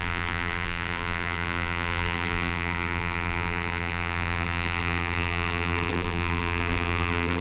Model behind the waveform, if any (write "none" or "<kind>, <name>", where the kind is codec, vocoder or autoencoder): vocoder, BigVGAN v2